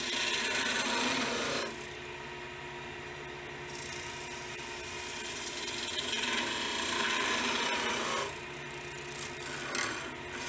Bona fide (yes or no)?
yes